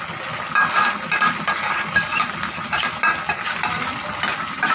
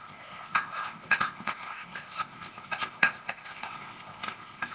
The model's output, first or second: second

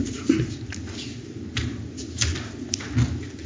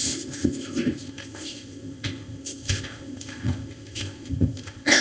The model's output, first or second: second